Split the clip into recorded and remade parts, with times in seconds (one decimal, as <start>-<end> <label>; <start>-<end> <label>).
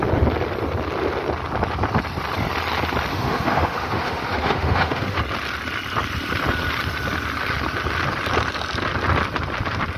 0.0-3.1 recorded; 3.1-5.2 remade; 5.2-10.0 recorded